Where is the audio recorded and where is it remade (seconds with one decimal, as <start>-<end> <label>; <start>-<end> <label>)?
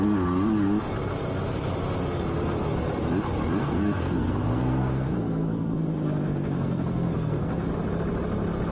0.0-3.6 recorded; 3.6-7.7 remade; 7.7-8.7 recorded